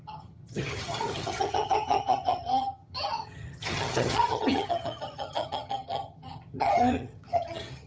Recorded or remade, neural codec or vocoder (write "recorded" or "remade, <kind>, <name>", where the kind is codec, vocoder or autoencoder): remade, vocoder, HiFi-GAN